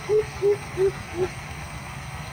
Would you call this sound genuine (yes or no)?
no